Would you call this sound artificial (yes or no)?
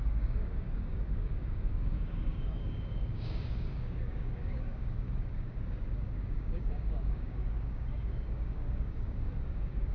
yes